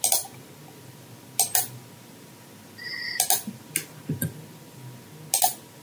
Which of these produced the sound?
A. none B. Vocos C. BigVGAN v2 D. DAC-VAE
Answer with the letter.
A